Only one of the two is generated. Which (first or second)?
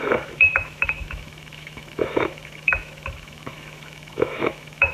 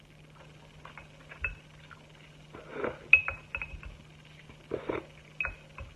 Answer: first